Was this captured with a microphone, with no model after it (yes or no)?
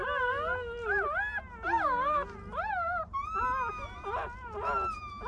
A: yes